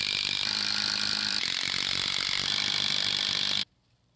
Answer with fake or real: fake